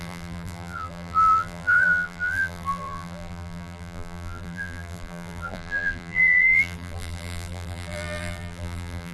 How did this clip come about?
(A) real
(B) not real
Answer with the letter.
B